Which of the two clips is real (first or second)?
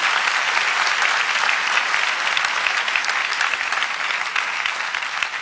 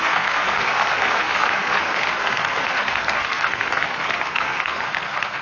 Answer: first